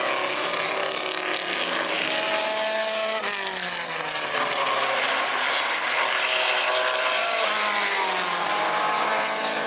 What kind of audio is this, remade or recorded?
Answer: recorded